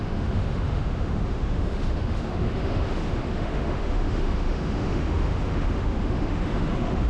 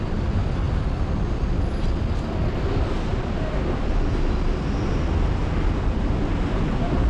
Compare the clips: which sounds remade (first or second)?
first